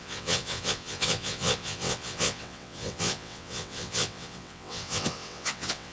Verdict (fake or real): fake